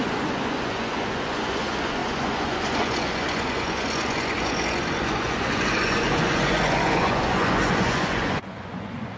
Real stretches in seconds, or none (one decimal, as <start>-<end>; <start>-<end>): none